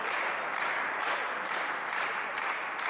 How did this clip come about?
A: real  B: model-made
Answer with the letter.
A